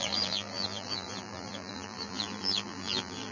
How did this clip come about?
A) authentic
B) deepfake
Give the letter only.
B